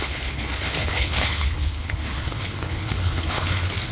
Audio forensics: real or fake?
fake